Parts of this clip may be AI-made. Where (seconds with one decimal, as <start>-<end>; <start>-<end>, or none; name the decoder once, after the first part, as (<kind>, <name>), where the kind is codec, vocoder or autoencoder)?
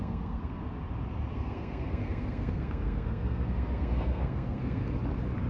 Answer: 0.0-0.6 (codec, SNAC); 1.3-4.8